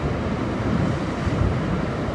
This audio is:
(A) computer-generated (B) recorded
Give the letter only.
B